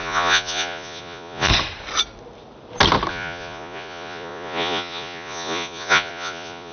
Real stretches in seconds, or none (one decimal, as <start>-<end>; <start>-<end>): 1.5-3.1

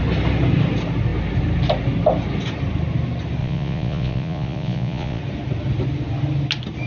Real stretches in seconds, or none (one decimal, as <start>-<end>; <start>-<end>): 0.0-3.4; 5.2-6.9